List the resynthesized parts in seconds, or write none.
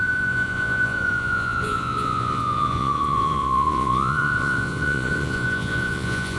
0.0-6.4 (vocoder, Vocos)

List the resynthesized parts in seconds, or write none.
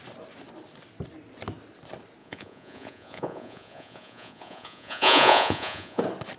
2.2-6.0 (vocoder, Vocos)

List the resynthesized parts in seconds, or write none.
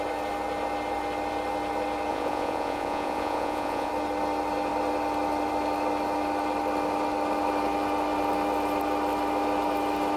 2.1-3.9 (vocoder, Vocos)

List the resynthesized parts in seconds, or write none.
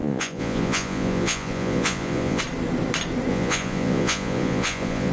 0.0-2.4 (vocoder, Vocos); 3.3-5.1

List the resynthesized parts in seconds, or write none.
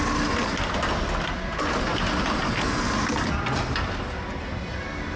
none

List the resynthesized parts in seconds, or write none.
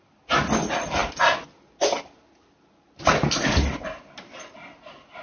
none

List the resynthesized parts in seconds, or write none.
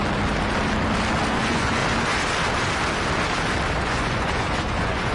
1.3-1.8 (vocoder, Vocos); 3.8-5.1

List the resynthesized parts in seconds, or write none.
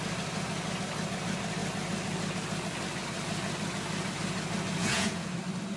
4.8-5.3 (vocoder, Vocos)